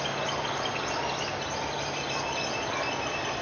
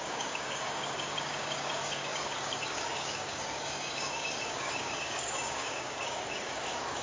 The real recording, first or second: first